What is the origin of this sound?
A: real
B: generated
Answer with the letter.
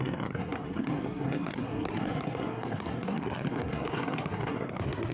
B